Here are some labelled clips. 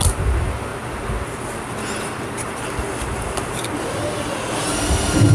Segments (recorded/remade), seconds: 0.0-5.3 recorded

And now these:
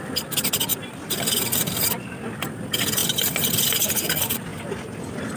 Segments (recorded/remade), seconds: 0.0-3.0 recorded; 3.0-4.1 remade; 4.1-5.4 recorded

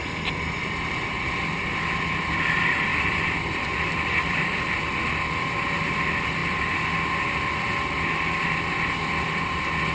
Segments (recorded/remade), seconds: 0.0-2.9 recorded; 2.9-4.8 remade; 4.8-9.9 recorded

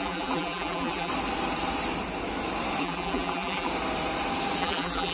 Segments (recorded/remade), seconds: 0.0-1.1 remade; 1.1-2.8 recorded; 2.8-3.7 remade; 3.7-4.6 recorded; 4.6-5.1 remade

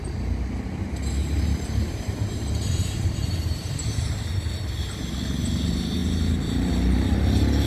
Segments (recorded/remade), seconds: 0.0-1.2 recorded; 1.2-3.9 remade; 3.9-7.7 recorded

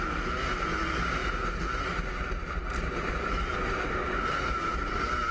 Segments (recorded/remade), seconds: 0.0-2.4 recorded; 2.4-3.6 remade; 3.6-4.0 recorded; 4.0-5.3 remade